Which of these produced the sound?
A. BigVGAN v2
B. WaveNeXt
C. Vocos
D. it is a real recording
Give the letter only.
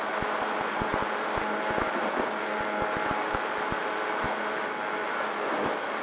D